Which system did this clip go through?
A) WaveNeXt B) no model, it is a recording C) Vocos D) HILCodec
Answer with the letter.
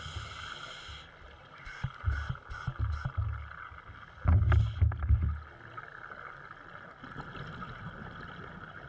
B